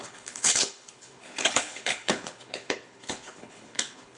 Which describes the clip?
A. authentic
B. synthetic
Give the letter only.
B